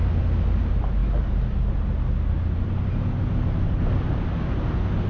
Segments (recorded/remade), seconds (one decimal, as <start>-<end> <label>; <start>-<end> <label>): 0.0-5.1 recorded